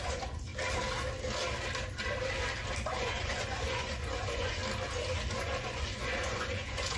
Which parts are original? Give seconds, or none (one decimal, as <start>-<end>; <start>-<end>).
0.5-3.0; 4.6-5.3